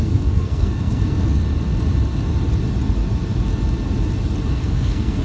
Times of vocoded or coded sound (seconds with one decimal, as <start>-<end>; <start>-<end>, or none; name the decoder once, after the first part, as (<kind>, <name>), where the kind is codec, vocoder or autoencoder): 0.0-1.4 (codec, SNAC); 4.5-5.2